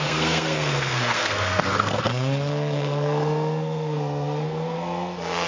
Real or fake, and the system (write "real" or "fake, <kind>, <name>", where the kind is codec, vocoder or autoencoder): fake, codec, SNAC